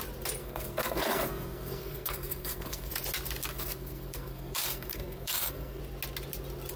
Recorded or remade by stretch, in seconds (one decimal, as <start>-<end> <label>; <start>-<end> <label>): 0.0-0.4 recorded; 0.4-2.9 remade; 2.9-3.5 recorded; 3.5-5.8 remade; 5.8-6.8 recorded